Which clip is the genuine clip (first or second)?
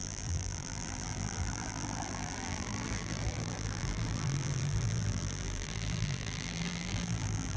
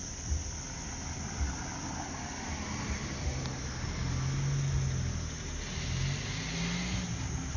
second